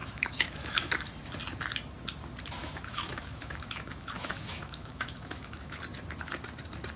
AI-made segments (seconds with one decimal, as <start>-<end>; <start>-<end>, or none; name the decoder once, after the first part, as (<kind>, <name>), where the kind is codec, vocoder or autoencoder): 0.0-0.9 (autoencoder, DAC-VAE); 2.6-5.8